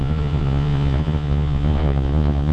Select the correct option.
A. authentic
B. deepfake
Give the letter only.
B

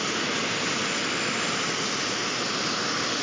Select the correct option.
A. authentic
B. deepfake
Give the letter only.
A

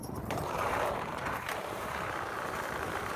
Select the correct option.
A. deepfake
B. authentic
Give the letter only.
A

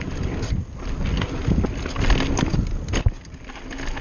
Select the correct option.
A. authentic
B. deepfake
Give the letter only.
A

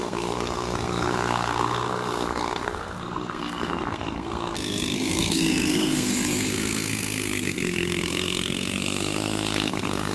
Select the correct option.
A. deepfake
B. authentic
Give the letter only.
A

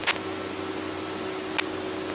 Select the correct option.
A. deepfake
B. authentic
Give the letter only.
B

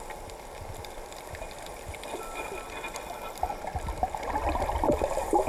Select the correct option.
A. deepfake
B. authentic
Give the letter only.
B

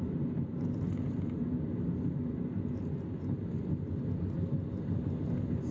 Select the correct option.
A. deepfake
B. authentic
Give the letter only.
B